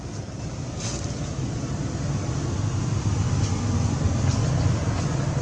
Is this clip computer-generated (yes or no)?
no